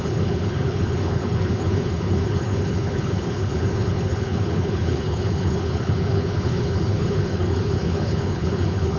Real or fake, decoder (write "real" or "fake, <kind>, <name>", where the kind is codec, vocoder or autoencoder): fake, codec, HILCodec